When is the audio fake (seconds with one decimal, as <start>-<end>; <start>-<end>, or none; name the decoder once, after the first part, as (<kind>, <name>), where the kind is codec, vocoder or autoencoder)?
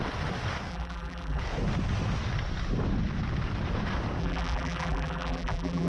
0.7-1.4 (vocoder, BigVGAN v2); 4.2-5.9